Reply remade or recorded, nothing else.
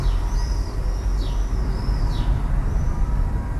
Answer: recorded